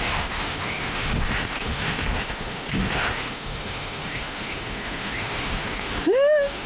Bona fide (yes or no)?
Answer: no